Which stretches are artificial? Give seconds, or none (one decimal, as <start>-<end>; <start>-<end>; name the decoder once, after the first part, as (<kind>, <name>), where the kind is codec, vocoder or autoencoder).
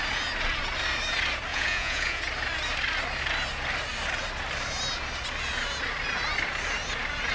1.5-2.2 (vocoder, Vocos)